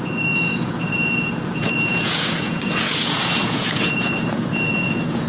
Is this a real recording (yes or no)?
no